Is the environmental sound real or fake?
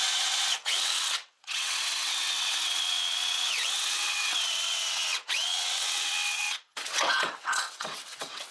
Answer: fake